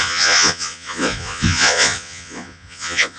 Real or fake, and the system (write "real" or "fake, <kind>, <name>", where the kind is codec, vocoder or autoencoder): fake, vocoder, Vocos